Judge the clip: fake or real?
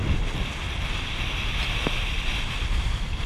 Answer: fake